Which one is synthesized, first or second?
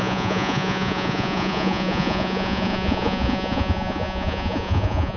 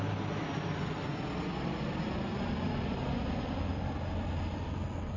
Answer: first